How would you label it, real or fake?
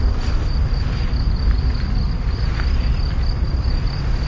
real